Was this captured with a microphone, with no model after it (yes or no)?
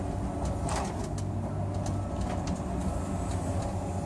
yes